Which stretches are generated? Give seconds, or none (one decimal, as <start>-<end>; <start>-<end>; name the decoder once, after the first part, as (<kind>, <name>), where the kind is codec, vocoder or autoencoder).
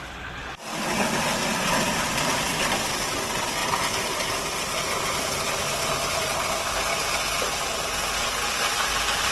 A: none